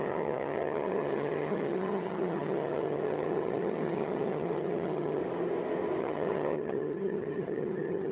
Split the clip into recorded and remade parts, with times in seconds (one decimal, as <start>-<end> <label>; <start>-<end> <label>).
0.0-5.2 remade; 5.2-6.0 recorded; 6.0-8.1 remade